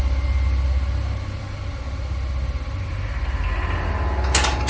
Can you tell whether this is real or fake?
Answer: real